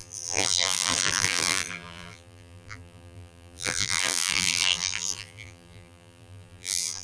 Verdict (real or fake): fake